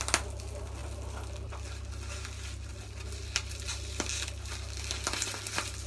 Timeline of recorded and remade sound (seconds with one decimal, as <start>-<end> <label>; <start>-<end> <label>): 0.0-5.9 recorded